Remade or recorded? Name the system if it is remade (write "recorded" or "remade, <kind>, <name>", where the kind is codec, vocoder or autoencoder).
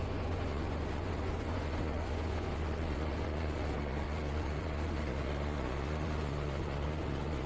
remade, vocoder, Vocos